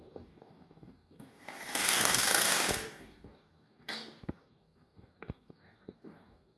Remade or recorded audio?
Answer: remade